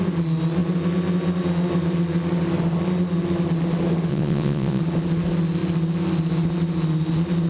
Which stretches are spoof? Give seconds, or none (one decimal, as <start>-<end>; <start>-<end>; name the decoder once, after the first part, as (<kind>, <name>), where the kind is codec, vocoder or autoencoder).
4.1-4.8 (vocoder, WaveNeXt)